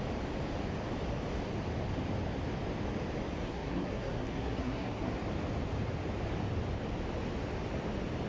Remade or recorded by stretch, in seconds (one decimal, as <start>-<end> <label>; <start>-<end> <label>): 0.0-3.4 recorded; 3.4-5.1 remade; 5.1-8.3 recorded